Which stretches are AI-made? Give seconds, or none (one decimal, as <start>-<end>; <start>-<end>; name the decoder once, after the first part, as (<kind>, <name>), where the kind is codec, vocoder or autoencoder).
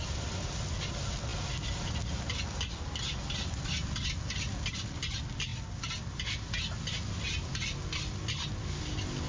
none